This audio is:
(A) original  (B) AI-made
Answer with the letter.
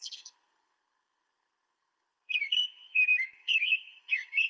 B